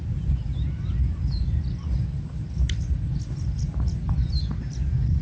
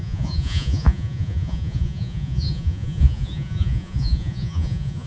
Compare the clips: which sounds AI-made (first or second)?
second